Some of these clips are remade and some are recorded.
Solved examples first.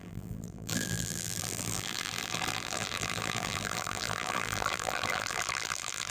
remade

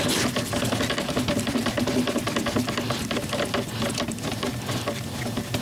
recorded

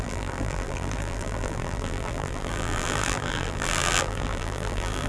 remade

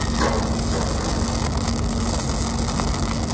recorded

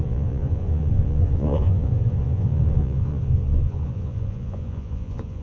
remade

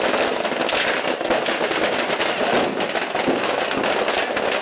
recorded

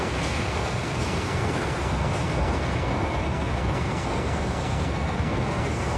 remade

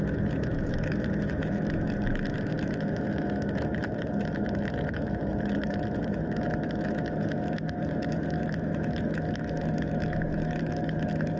remade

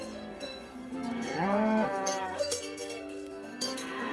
remade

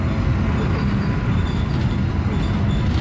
recorded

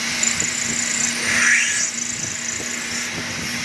recorded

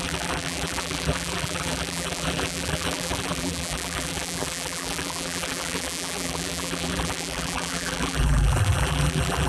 remade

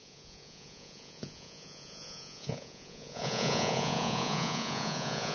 remade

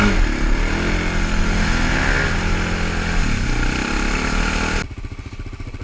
recorded